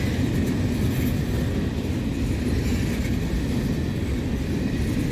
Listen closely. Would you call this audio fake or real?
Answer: real